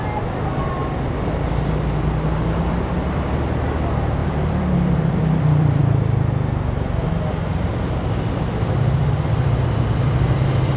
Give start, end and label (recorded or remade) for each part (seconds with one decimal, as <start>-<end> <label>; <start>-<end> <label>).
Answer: 0.0-4.2 recorded; 4.2-5.8 remade; 5.8-10.8 recorded